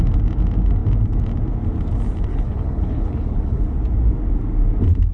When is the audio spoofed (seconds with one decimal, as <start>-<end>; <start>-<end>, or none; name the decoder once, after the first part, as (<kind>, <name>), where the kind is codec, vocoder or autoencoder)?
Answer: 2.3-3.6 (codec, HILCodec)